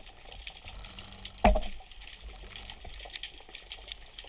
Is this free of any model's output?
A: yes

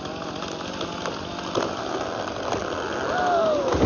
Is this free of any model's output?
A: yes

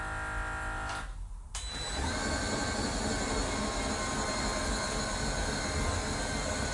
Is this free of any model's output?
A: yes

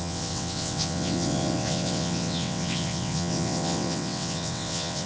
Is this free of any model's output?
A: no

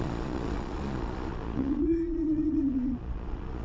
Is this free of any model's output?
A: no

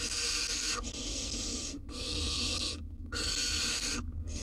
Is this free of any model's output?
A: no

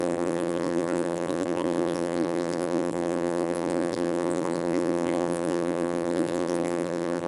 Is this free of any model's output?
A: no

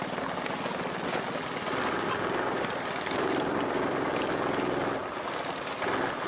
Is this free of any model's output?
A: yes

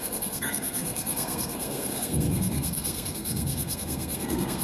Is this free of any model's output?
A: no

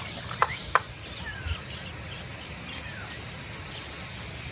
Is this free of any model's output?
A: yes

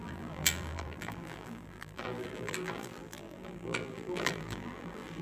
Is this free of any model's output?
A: no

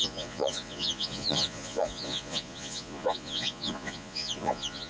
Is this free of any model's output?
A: no